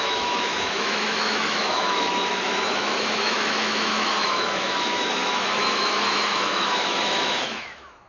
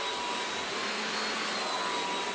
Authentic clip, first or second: second